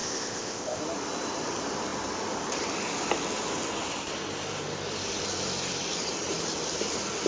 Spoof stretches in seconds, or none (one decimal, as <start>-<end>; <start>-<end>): 0.0-0.8